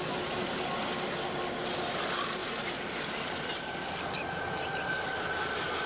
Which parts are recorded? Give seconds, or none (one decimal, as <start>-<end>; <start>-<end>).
0.0-2.4; 5.1-5.9